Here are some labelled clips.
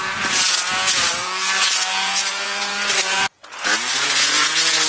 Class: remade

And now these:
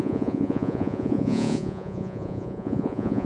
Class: remade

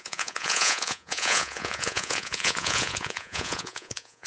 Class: remade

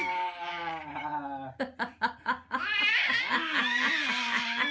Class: recorded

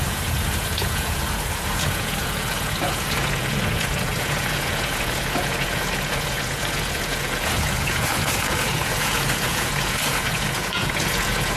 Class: remade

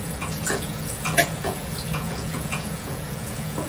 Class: remade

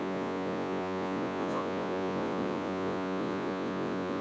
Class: remade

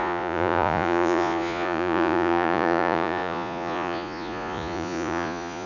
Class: remade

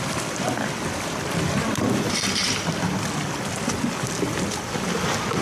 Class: recorded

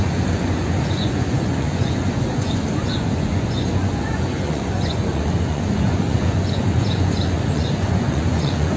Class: remade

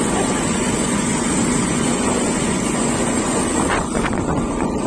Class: remade